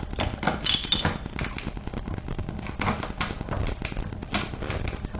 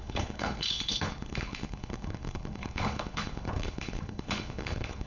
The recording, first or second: first